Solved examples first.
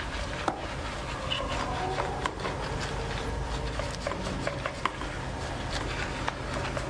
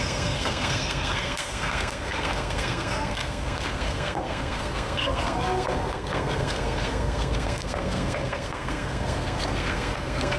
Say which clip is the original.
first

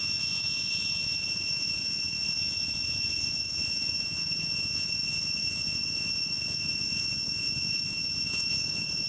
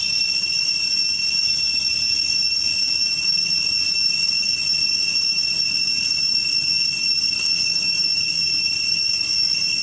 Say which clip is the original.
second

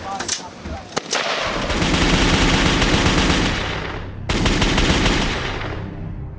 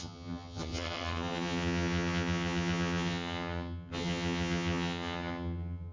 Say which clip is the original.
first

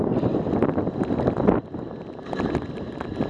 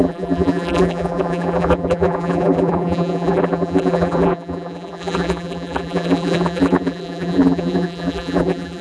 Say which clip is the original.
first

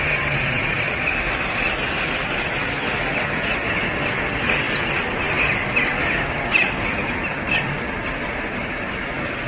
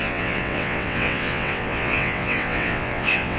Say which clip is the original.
first